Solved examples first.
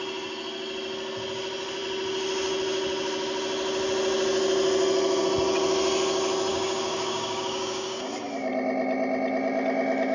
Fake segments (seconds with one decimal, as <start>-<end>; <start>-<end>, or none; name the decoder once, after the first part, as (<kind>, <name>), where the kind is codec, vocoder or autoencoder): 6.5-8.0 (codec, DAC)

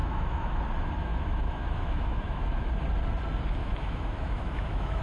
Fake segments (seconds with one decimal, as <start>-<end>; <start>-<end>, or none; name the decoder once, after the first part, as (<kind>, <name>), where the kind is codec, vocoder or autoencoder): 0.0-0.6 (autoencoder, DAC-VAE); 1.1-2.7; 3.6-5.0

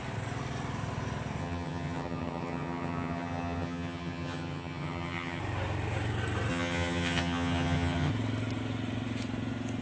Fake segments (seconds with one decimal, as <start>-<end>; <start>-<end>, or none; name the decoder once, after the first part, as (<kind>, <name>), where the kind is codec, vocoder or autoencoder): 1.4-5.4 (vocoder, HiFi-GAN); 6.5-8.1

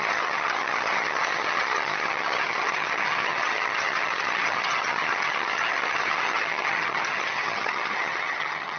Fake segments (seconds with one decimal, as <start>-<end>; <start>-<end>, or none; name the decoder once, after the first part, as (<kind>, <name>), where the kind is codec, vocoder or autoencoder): 0.0-8.8 (vocoder, HiFi-GAN)

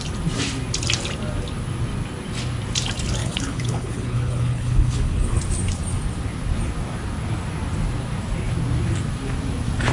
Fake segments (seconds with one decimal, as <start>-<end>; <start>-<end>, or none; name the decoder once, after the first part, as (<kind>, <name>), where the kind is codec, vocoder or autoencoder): 3.2-5.4 (codec, HILCodec)